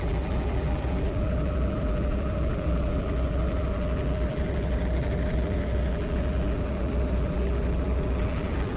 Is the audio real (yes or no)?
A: no